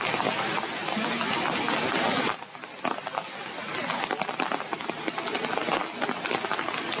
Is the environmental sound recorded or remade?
recorded